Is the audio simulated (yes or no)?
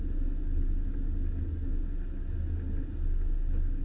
no